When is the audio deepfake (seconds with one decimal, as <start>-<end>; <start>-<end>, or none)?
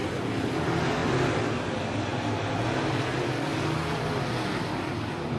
none